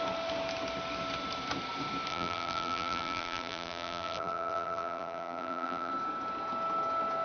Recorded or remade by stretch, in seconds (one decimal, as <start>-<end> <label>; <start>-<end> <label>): 0.0-2.1 recorded; 2.1-5.9 remade; 5.9-7.2 recorded